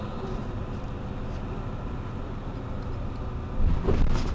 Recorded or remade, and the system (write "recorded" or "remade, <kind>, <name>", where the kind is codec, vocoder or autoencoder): recorded